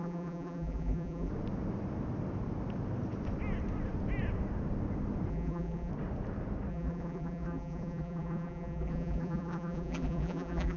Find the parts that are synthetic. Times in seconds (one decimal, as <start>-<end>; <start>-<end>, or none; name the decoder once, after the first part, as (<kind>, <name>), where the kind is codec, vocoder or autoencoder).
0.0-1.3 (vocoder, BigVGAN v2); 5.3-5.9; 6.7-10.8